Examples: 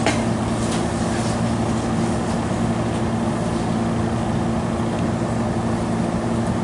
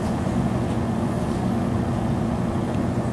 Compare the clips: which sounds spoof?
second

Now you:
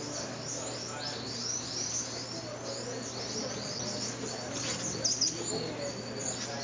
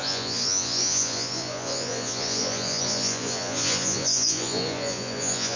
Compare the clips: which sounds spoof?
second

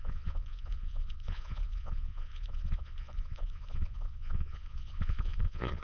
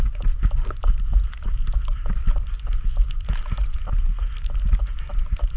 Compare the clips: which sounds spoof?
first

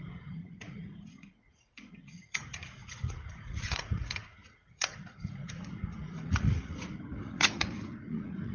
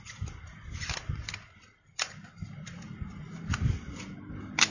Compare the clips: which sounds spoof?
first